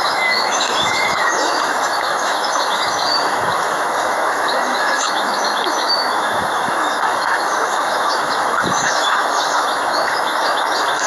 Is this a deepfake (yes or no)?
yes